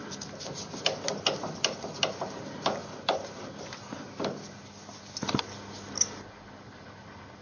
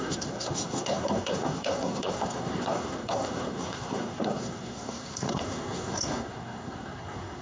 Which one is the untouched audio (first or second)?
first